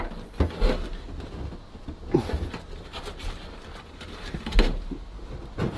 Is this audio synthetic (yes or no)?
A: no